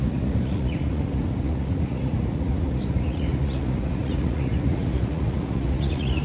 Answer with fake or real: fake